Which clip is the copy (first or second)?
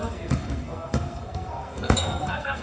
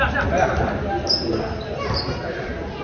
first